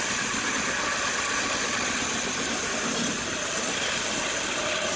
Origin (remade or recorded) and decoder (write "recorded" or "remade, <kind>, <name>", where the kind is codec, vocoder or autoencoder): recorded